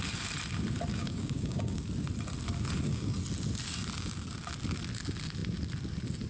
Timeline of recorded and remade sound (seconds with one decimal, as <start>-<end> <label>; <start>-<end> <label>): 0.0-0.9 recorded; 0.9-1.8 remade; 1.8-6.3 recorded